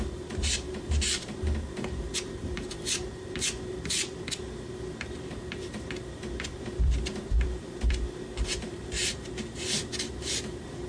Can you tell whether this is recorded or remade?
remade